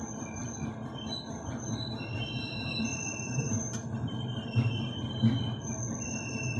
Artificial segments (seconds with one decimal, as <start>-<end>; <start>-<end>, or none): 2.9-3.9